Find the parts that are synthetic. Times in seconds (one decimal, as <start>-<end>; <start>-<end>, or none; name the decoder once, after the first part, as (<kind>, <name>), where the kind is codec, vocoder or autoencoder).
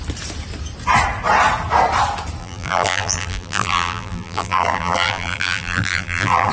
2.4-6.5 (vocoder, BigVGAN v2)